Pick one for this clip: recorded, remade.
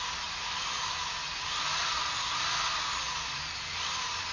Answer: recorded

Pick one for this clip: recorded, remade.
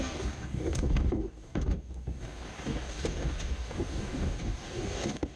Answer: remade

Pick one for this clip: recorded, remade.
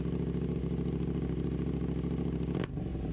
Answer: recorded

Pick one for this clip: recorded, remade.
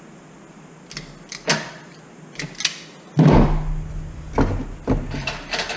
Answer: recorded